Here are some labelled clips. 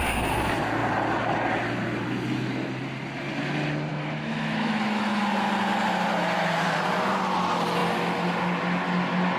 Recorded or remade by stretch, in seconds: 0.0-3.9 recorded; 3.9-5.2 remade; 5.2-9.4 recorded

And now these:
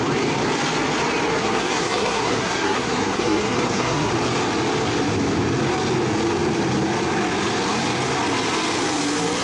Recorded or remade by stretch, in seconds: 0.0-1.4 recorded; 1.4-4.1 remade; 4.1-9.4 recorded